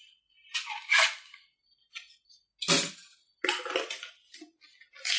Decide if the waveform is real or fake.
real